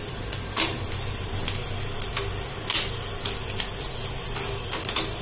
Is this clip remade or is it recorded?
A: recorded